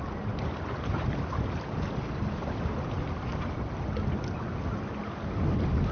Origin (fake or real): real